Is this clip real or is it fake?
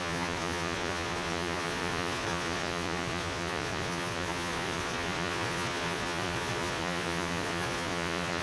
fake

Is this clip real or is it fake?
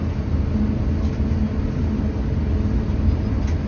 real